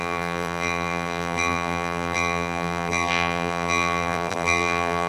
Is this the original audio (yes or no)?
no